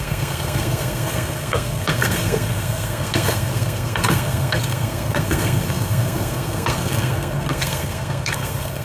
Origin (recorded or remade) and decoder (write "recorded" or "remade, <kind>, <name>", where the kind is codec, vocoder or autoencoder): remade, codec, SNAC